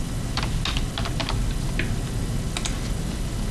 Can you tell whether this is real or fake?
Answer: real